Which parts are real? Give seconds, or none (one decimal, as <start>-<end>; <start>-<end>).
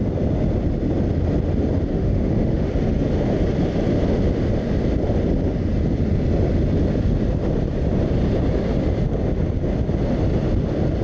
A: 0.0-1.9; 2.7-11.0